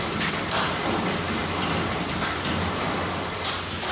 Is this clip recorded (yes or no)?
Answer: yes